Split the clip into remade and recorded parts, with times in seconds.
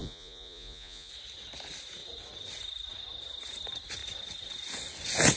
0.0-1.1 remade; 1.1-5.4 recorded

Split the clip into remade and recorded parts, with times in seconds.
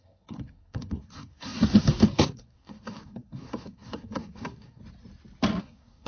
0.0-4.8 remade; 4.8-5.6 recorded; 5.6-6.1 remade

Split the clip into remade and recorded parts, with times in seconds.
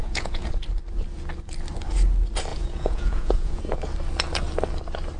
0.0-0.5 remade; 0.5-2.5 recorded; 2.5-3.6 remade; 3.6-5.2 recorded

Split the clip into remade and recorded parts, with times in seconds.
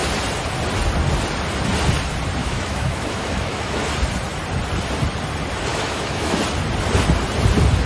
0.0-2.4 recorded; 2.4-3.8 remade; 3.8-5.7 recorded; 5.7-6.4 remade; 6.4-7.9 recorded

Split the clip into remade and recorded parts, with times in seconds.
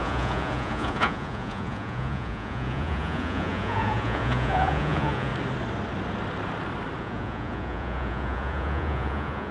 0.0-5.3 remade; 5.3-7.0 recorded; 7.0-9.5 remade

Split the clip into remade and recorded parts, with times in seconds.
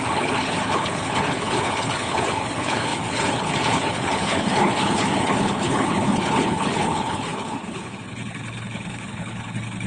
0.0-9.9 remade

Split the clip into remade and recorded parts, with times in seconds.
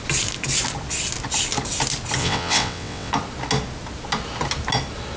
0.0-2.2 recorded; 2.2-3.1 remade; 3.1-5.2 recorded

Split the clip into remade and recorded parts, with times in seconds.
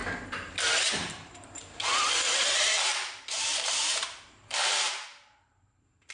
0.0-1.0 recorded; 1.0-1.9 remade; 1.9-2.4 recorded; 2.4-2.9 remade; 2.9-3.4 recorded; 3.4-6.1 remade